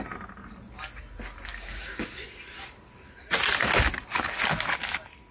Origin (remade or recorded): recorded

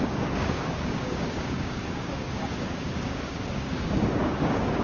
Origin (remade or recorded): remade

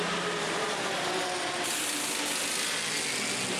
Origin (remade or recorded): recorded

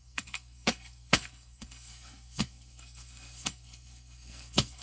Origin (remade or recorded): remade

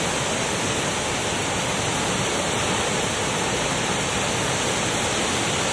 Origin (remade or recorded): recorded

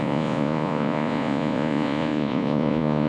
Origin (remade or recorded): remade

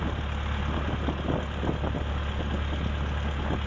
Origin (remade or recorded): recorded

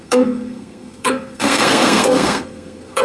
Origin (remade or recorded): remade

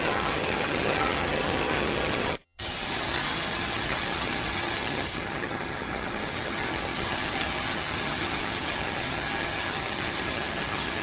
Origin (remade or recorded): remade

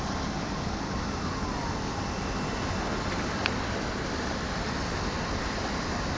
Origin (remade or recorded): recorded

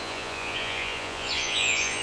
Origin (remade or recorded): remade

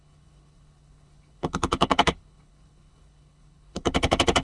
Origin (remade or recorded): remade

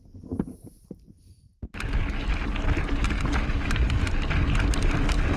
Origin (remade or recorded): recorded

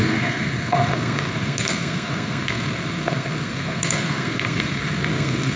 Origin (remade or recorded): remade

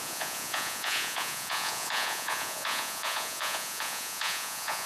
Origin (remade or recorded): remade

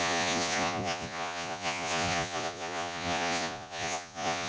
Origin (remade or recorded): remade